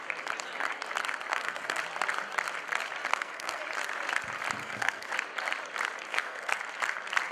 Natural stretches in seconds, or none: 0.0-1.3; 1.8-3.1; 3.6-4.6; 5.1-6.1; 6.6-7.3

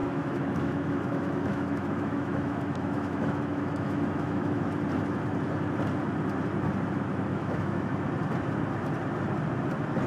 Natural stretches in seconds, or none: 4.6-7.3; 7.9-10.1

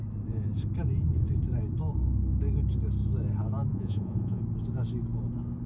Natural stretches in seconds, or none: 0.0-3.7; 4.4-5.7

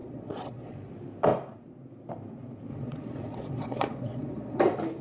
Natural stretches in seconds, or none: 0.9-2.7; 4.6-5.0

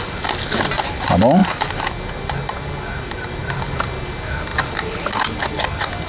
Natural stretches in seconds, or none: 0.0-6.1